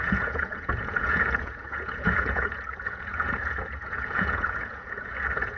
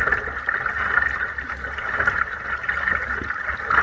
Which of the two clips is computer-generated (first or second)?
first